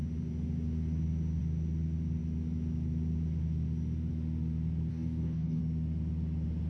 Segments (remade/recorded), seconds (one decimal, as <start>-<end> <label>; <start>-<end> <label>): 0.0-4.9 recorded; 4.9-5.6 remade; 5.6-6.7 recorded